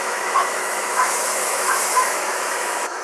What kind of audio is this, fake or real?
fake